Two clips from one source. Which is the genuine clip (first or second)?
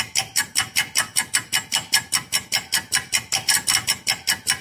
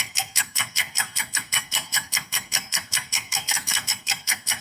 first